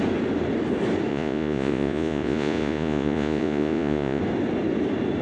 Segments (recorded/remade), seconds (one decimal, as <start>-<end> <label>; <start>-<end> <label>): 0.0-1.1 recorded; 1.1-4.2 remade; 4.2-5.2 recorded